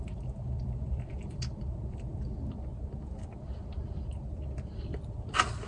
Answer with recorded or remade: remade